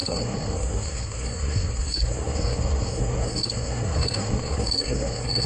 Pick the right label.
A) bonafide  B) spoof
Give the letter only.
B